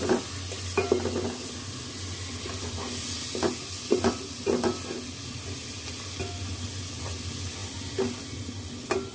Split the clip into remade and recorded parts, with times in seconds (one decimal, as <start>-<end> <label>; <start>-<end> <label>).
0.0-9.1 recorded